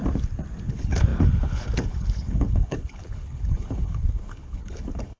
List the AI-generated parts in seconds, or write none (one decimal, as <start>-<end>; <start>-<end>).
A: 0.7-5.2